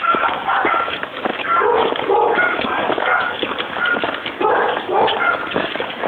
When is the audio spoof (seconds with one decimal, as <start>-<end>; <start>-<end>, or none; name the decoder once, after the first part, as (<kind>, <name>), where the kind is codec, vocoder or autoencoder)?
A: 0.0-6.1 (codec, DAC)